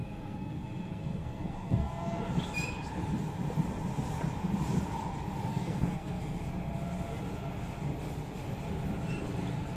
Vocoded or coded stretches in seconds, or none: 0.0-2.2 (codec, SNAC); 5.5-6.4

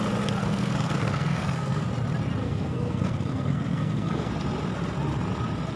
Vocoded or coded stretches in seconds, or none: 0.4-1.9 (codec, SNAC); 2.4-4.3